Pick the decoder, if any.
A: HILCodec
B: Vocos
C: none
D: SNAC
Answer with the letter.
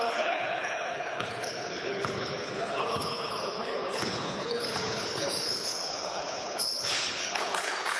A